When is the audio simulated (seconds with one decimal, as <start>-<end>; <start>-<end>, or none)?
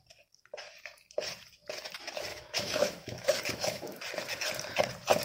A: 2.3-4.0